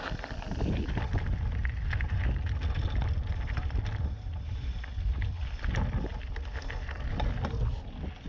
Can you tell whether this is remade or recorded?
recorded